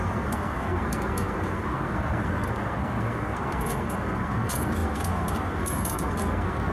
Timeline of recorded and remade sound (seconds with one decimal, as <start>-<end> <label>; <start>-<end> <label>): 0.0-6.7 remade

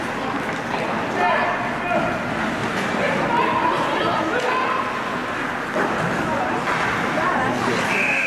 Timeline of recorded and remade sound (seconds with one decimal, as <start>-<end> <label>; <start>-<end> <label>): 0.0-2.6 recorded; 2.6-4.2 remade; 4.2-8.3 recorded

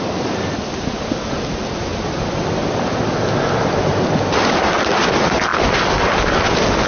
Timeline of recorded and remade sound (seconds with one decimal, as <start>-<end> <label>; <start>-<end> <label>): 0.0-6.9 recorded